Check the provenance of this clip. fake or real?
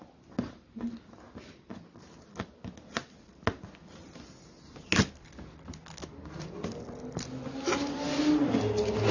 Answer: real